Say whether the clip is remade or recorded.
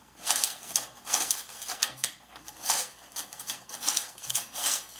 remade